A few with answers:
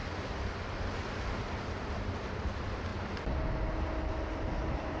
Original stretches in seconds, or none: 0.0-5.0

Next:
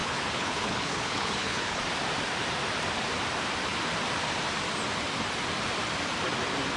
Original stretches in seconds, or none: 1.8-6.8

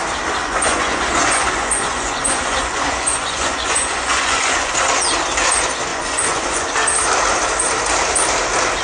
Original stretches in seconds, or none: 0.0-0.4; 4.7-5.9; 6.7-8.8

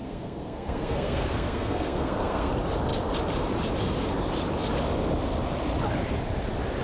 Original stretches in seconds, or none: 2.5-6.8

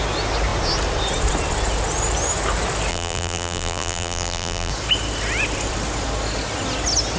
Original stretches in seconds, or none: 0.0-2.9; 4.7-7.2

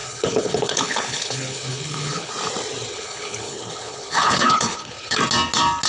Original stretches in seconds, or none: 2.3-2.9; 5.2-5.9